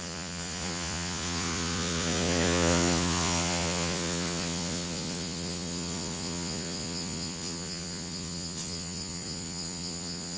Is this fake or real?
fake